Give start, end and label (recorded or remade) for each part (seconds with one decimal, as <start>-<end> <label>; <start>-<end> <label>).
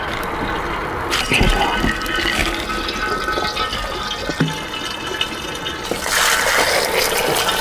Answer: 0.0-7.6 recorded